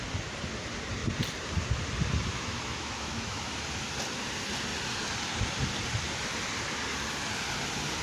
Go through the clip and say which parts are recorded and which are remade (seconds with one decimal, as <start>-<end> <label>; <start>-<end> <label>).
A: 0.0-2.3 recorded; 2.3-3.4 remade; 3.4-8.0 recorded